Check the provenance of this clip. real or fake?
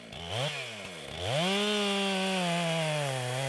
real